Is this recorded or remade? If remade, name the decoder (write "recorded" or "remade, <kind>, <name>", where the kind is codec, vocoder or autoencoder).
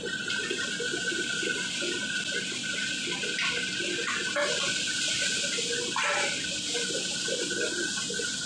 recorded